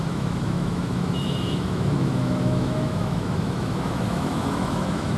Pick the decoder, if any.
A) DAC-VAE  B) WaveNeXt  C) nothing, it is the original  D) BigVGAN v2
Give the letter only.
A